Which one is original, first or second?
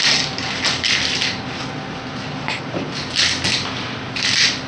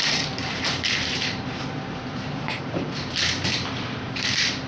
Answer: first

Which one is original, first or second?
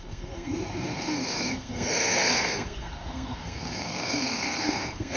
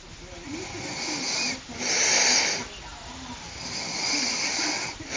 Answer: second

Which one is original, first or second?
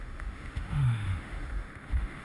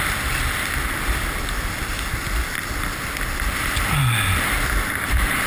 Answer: second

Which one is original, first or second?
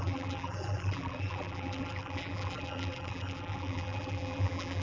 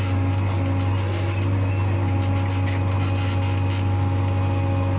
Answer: second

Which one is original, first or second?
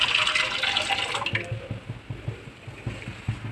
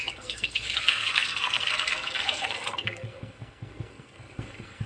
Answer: first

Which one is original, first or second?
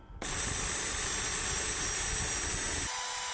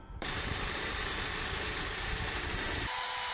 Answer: first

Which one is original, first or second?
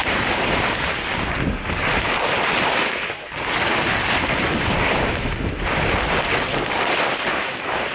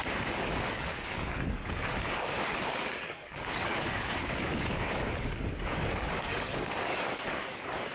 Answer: first